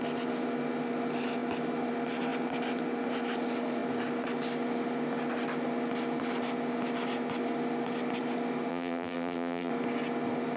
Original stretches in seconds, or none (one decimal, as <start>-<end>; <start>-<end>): 0.0-8.7; 9.7-10.6